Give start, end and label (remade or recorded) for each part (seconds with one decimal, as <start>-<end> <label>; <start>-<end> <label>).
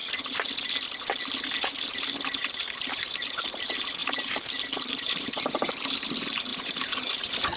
0.0-2.4 recorded; 2.4-3.6 remade; 3.6-4.0 recorded; 4.0-5.9 remade; 5.9-6.5 recorded; 6.5-7.6 remade